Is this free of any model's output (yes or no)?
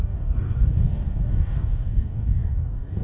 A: no